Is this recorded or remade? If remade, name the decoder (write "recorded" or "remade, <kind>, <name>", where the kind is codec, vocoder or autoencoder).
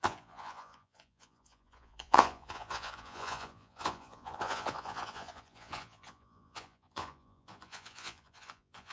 remade, vocoder, Vocos